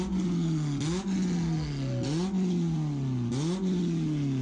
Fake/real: real